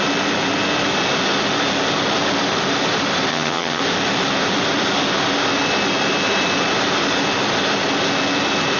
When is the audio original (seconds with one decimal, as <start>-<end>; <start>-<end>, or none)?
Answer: 0.0-3.3; 3.8-8.8